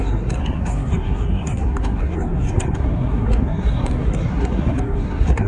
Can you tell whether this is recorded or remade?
remade